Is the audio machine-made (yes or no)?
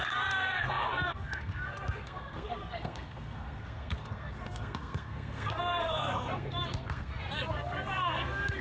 yes